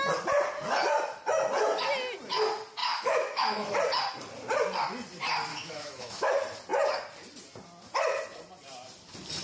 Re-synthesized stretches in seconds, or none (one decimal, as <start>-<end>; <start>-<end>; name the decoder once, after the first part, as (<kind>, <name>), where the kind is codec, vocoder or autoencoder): 2.8-3.8 (autoencoder, DAC-VAE); 5.5-6.3